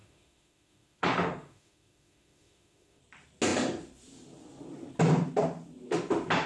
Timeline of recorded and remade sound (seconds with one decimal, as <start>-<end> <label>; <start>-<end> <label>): 0.0-3.0 remade; 3.0-6.5 recorded